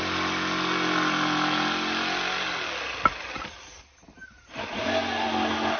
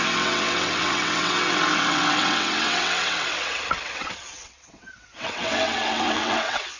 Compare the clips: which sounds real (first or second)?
first